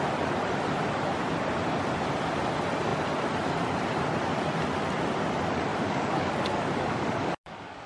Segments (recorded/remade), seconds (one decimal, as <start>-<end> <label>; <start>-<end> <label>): 0.0-5.7 recorded; 5.7-7.9 remade